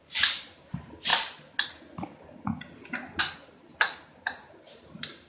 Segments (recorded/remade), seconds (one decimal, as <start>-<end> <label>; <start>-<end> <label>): 0.0-1.1 remade; 1.1-3.2 recorded; 3.2-5.3 remade